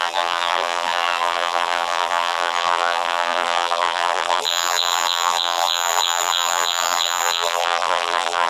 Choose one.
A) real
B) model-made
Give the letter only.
B